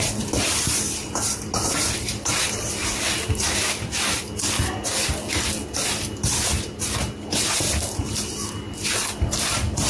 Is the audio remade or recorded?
recorded